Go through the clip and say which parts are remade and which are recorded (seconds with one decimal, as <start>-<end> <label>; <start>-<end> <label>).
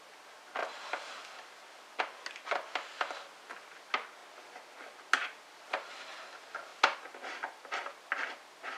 0.0-8.8 recorded